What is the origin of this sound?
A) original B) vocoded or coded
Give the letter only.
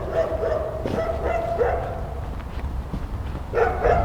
A